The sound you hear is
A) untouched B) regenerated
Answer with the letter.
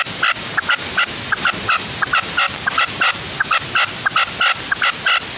A